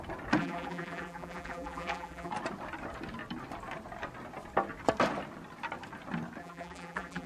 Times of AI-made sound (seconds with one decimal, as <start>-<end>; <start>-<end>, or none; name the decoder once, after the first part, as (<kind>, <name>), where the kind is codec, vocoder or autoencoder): 0.4-2.3 (vocoder, BigVGAN v2); 6.4-7.3